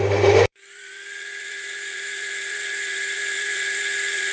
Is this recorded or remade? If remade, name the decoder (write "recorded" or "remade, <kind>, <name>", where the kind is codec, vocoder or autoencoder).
remade, vocoder, BigVGAN v2